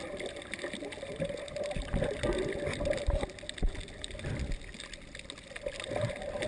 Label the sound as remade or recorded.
recorded